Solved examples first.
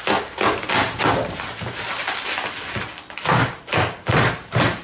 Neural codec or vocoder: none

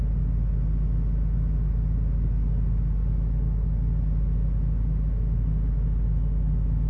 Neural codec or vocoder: none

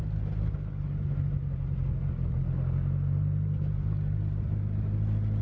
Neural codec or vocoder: none